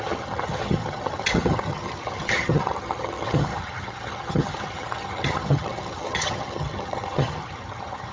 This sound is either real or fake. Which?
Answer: fake